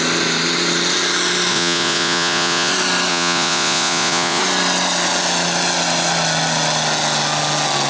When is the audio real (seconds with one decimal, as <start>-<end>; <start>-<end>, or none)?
0.0-1.5; 2.7-3.1; 4.4-7.9